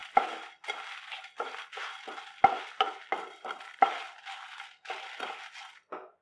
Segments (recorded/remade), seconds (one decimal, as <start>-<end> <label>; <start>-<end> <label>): 0.0-6.2 recorded